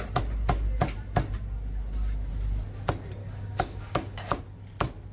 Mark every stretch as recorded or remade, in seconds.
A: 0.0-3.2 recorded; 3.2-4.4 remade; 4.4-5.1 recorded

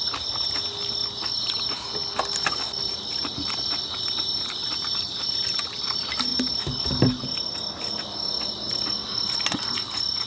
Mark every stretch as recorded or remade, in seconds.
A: 0.0-10.3 recorded

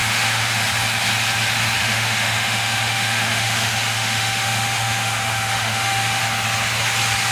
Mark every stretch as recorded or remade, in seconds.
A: 0.0-0.6 remade; 0.6-1.8 recorded; 1.8-6.2 remade; 6.2-7.3 recorded

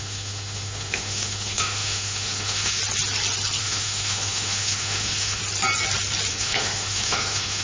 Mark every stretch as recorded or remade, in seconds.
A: 0.0-2.8 remade; 2.8-3.6 recorded; 3.6-5.4 remade; 5.4-6.3 recorded; 6.3-7.6 remade

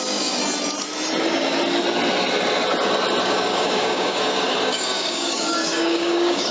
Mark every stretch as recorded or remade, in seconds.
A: 0.0-0.4 remade; 0.4-3.2 recorded; 3.2-6.5 remade

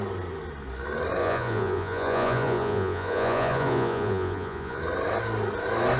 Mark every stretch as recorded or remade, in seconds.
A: 0.0-1.2 recorded; 1.2-4.8 remade; 4.8-6.0 recorded

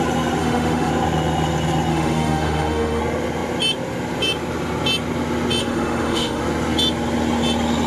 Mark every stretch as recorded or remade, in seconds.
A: 0.0-0.4 recorded; 0.4-0.9 remade; 0.9-1.9 recorded; 1.9-3.0 remade; 3.0-5.6 recorded; 5.6-6.4 remade; 6.4-7.9 recorded